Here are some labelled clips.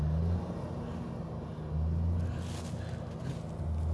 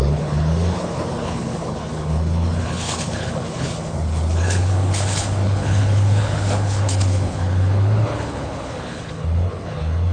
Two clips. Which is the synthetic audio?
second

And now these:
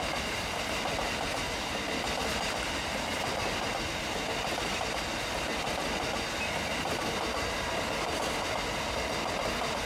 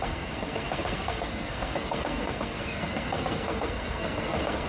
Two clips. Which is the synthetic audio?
second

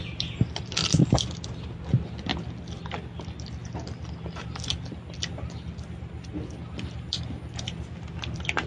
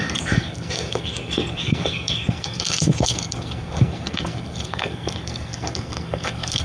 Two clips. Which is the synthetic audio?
second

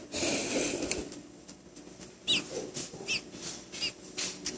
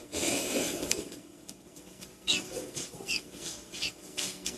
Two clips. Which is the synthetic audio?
second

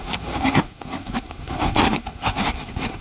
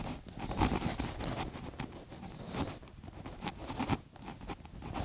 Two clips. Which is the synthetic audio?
first